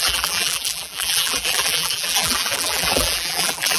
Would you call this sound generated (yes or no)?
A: yes